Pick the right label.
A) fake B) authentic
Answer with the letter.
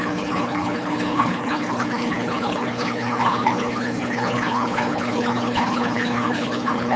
A